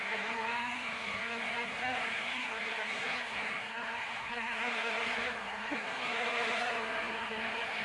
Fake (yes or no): yes